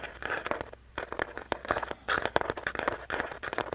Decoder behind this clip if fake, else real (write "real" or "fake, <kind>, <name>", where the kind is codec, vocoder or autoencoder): fake, vocoder, BigVGAN v2